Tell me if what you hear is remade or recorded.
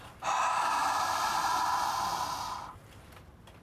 recorded